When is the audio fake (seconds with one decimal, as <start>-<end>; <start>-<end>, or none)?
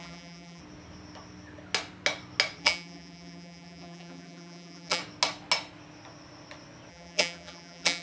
0.0-0.6; 2.6-5.0; 6.9-8.0